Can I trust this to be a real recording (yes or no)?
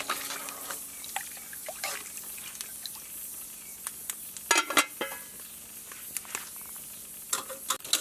yes